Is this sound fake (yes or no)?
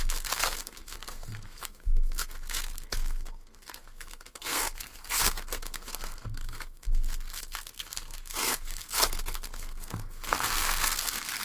yes